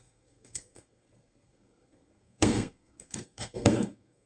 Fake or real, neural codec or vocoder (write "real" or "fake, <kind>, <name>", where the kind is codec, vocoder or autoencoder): fake, codec, SNAC